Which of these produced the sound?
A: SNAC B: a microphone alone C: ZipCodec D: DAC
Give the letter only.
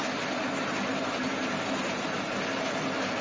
B